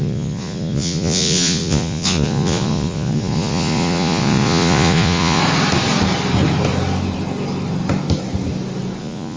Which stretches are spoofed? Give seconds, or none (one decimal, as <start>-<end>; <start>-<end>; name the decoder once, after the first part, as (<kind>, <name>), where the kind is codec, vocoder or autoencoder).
0.0-5.4 (vocoder, Vocos); 9.0-9.4